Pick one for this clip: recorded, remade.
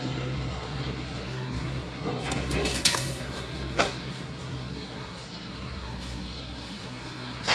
remade